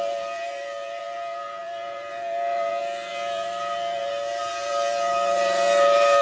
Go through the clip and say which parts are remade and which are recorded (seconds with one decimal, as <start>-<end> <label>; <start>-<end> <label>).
0.0-6.2 remade